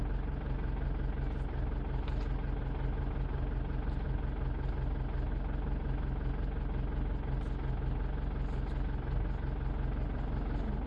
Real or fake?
real